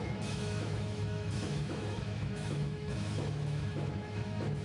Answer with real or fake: fake